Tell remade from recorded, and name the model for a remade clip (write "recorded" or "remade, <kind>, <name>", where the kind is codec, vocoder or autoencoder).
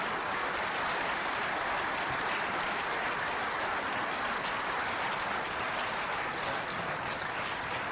recorded